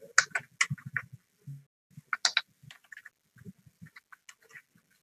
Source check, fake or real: real